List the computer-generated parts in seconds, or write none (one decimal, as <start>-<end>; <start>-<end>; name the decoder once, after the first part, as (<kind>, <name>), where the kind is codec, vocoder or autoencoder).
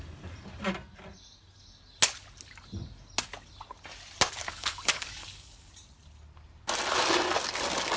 4.4-5.7 (codec, DAC)